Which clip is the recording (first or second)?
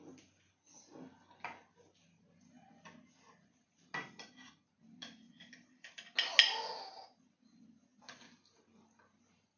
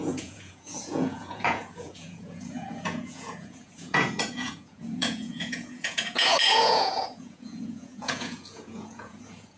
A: first